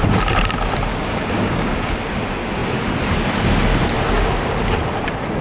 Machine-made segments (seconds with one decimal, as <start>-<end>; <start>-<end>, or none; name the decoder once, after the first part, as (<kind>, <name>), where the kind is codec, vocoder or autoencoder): 0.9-2.0 (codec, DAC)